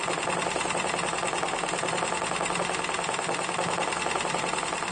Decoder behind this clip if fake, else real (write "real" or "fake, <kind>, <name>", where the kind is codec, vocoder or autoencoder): real